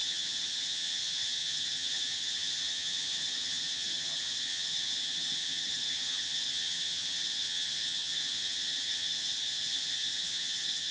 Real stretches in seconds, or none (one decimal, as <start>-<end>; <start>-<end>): none